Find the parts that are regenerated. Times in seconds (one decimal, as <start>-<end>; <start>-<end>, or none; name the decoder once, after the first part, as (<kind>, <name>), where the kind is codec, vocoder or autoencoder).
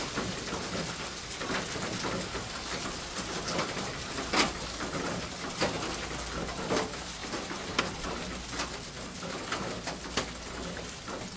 none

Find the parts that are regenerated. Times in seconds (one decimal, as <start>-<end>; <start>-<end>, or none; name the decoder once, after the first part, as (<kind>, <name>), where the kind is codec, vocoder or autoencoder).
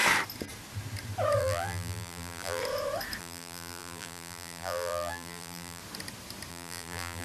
1.4-2.6 (vocoder, BigVGAN v2); 3.2-5.8; 6.5-7.2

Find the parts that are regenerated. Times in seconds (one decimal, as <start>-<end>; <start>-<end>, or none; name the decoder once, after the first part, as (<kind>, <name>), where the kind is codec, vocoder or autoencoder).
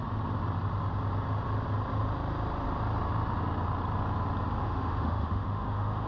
4.6-6.1 (autoencoder, DAC-VAE)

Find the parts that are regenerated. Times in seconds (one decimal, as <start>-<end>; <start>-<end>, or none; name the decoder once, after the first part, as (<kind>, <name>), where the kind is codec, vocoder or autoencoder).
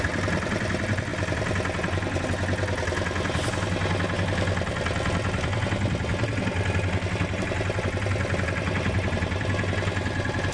none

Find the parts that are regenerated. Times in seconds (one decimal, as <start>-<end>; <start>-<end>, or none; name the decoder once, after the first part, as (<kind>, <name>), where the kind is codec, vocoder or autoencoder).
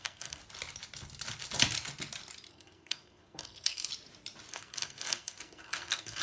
0.0-0.4 (codec, SNAC); 2.5-3.9; 4.5-6.2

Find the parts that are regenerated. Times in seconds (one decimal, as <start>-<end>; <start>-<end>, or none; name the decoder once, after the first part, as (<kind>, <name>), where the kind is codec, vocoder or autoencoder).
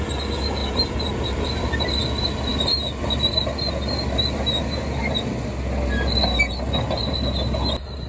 0.6-2.0 (vocoder, BigVGAN v2)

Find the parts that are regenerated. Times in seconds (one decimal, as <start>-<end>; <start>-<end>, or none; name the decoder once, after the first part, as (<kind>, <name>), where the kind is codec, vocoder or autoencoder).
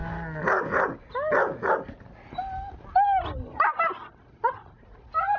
none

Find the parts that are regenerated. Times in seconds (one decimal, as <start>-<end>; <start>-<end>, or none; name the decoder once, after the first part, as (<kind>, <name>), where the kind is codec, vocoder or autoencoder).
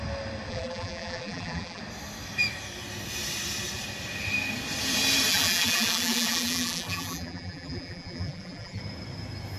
0.5-1.8 (vocoder, BigVGAN v2); 5.3-8.8